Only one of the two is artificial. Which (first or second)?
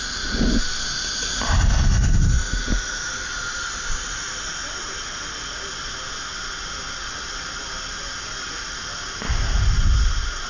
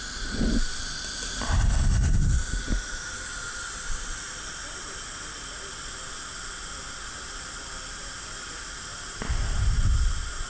second